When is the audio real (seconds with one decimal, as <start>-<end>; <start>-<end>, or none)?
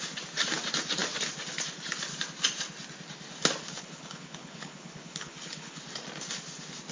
0.0-3.6; 5.8-6.9